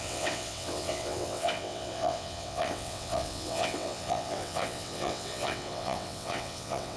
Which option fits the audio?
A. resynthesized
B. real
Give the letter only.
A